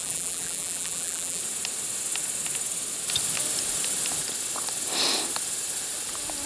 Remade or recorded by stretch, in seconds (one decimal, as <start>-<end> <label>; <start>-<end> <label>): 0.0-1.4 remade; 1.4-6.5 recorded